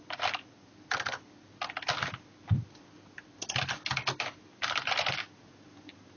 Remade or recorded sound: recorded